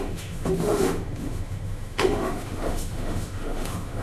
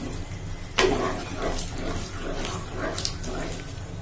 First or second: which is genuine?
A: second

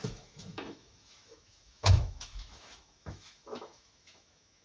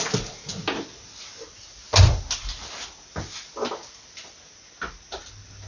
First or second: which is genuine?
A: second